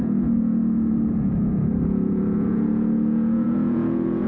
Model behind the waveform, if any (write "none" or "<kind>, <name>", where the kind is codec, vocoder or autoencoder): vocoder, Vocos